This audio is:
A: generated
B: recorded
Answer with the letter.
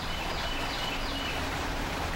B